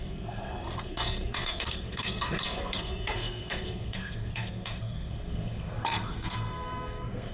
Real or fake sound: fake